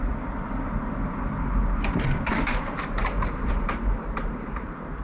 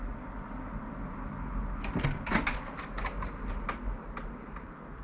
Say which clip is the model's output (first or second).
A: first